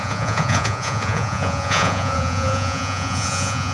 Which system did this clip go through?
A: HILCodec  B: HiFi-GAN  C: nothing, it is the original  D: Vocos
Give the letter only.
D